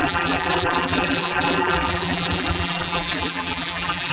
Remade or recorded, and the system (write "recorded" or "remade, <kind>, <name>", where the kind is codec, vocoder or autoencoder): remade, vocoder, BigVGAN v2